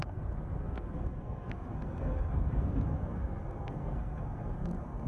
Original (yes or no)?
no